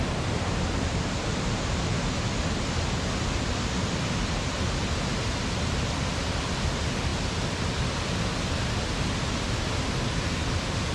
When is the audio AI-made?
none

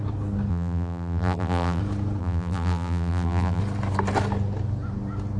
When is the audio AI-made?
0.5-1.8 (vocoder, BigVGAN v2); 2.2-3.6

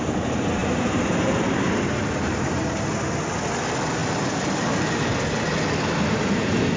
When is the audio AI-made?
0.6-2.6 (vocoder, BigVGAN v2); 4.0-4.6

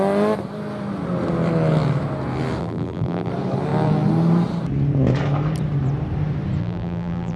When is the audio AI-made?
2.6-3.3 (vocoder, BigVGAN v2); 6.6-7.4

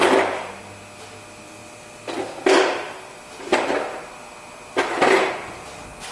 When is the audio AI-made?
none